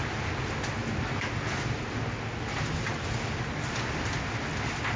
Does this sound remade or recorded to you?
recorded